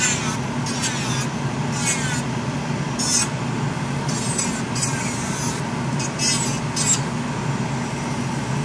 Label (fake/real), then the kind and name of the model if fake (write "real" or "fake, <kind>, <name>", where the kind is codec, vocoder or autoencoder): real